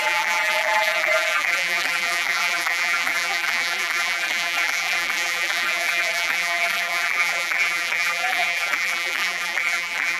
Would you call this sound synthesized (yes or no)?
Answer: yes